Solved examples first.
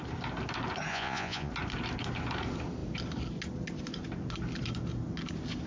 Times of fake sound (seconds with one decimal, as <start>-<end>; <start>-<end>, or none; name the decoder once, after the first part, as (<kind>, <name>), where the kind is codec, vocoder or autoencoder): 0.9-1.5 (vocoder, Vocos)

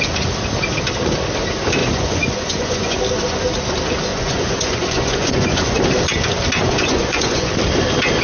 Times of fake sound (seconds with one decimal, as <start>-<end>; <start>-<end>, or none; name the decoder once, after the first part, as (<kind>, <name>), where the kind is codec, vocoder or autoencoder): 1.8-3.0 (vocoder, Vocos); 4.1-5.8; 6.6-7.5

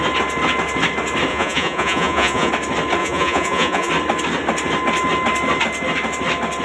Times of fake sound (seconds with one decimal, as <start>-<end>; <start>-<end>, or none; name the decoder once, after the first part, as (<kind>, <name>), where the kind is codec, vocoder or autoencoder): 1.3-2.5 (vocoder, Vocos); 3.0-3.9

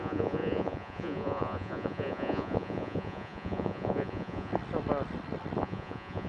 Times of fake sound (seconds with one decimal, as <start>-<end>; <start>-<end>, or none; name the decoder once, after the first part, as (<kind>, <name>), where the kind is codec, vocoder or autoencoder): 0.0-4.5 (vocoder, Vocos); 5.6-6.3